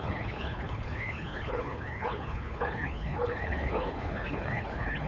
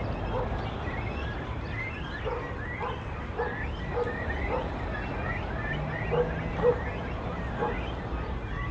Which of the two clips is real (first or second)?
second